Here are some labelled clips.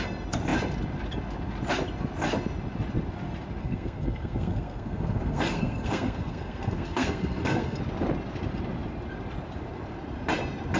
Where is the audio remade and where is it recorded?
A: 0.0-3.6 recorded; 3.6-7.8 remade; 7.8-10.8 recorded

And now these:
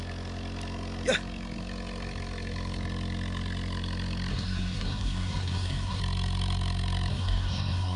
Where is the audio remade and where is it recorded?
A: 0.0-4.3 recorded; 4.3-6.0 remade; 6.0-7.1 recorded; 7.1-8.0 remade

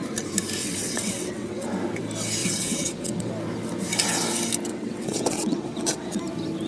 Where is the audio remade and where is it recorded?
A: 0.0-0.6 recorded; 0.6-1.7 remade; 1.7-2.4 recorded; 2.4-3.3 remade; 3.3-4.7 recorded; 4.7-6.2 remade; 6.2-6.7 recorded

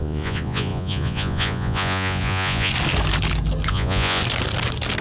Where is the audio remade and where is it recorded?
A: 0.0-2.7 remade; 2.7-3.7 recorded; 3.7-4.2 remade; 4.2-5.0 recorded

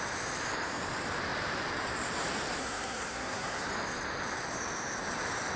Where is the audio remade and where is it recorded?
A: 0.0-2.6 recorded; 2.6-3.7 remade; 3.7-5.6 recorded

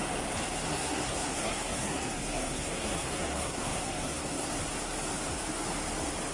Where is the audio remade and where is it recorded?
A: 0.0-0.7 recorded; 0.7-4.5 remade; 4.5-6.3 recorded

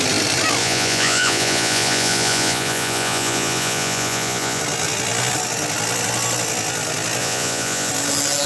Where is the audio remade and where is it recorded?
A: 0.0-0.6 recorded; 0.6-4.6 remade; 4.6-7.2 recorded; 7.2-7.9 remade; 7.9-8.5 recorded

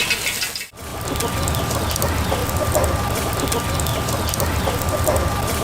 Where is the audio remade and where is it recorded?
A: 0.0-5.6 recorded